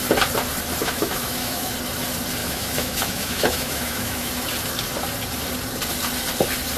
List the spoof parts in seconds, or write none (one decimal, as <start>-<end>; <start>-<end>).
0.8-1.7; 2.4-4.3